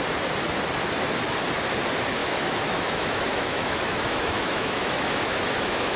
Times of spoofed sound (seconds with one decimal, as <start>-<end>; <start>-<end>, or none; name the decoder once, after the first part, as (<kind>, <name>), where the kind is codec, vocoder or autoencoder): 2.2-6.0 (autoencoder, DAC-VAE)

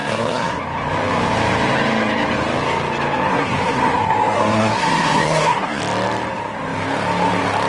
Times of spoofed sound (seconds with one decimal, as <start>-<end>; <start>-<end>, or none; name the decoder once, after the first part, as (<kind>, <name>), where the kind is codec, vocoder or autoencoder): 0.0-0.6 (codec, SNAC); 3.3-5.8

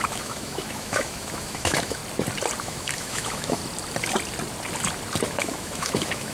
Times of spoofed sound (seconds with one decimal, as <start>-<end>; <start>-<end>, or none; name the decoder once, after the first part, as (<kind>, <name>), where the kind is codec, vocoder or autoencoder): 0.0-2.0 (autoencoder, DAC-VAE); 2.6-3.6; 5.3-6.3

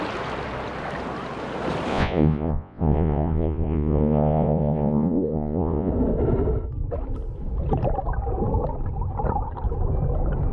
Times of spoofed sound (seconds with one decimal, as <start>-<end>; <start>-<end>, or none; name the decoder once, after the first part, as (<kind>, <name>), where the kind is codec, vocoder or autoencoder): 1.9-5.9 (vocoder, Vocos)

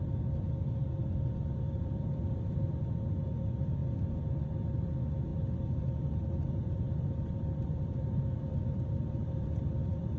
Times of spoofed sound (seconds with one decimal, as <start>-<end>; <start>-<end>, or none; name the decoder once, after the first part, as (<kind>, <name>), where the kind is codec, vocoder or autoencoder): 1.0-2.8 (vocoder, BigVGAN v2); 5.3-10.2

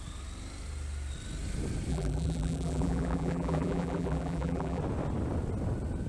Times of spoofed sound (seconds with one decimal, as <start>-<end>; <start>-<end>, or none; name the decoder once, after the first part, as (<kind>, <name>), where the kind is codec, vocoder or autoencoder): 1.9-4.8 (vocoder, BigVGAN v2)

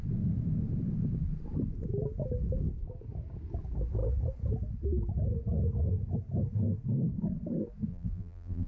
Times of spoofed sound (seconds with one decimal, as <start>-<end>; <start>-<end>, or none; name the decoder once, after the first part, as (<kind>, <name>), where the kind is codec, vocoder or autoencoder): 7.9-8.7 (vocoder, BigVGAN v2)

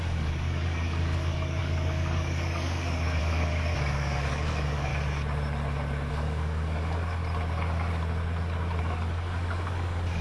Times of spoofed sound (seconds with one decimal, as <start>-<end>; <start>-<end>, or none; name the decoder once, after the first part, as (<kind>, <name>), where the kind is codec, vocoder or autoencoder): 0.0-4.9 (codec, DAC); 6.1-7.2; 8.8-10.2